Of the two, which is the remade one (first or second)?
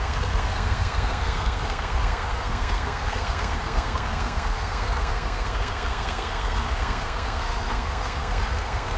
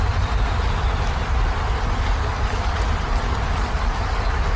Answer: first